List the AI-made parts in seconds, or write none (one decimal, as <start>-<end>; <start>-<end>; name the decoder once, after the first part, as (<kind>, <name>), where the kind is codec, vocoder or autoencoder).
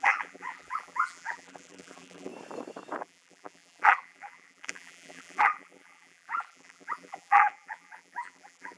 0.0-2.3 (vocoder, BigVGAN v2); 3.0-8.8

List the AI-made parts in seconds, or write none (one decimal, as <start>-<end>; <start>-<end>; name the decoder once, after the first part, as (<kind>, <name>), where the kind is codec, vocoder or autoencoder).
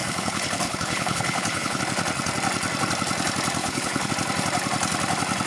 0.0-1.8 (codec, HILCodec); 3.6-4.1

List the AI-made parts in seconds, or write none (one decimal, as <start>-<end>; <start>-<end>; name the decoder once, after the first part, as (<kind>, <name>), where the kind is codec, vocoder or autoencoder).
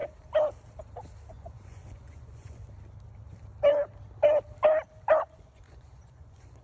1.3-2.6 (vocoder, Vocos); 5.2-6.6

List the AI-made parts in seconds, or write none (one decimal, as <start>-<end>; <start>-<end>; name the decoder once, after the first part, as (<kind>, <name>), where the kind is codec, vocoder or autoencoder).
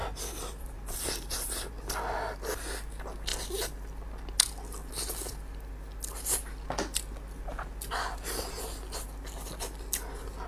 0.0-1.7 (vocoder, BigVGAN v2)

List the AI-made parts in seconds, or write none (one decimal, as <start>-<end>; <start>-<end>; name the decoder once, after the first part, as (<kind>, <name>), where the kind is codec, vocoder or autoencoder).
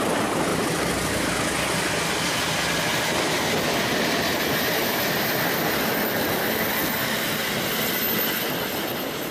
0.5-1.3 (vocoder, BigVGAN v2); 4.3-5.5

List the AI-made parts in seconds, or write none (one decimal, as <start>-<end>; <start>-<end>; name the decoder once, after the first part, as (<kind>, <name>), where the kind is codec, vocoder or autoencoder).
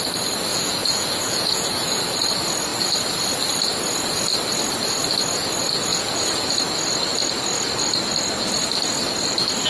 0.5-2.0 (vocoder, Vocos); 5.9-6.5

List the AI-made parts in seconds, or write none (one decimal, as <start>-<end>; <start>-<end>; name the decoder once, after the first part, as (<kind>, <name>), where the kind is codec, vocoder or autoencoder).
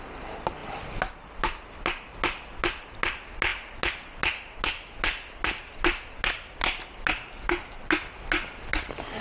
none